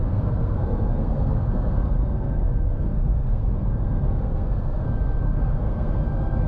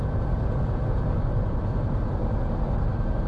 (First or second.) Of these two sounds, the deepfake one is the first